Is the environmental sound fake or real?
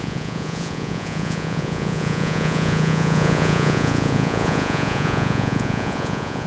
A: fake